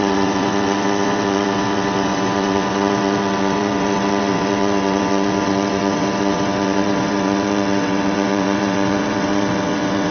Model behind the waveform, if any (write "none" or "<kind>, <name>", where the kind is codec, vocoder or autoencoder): vocoder, WaveNeXt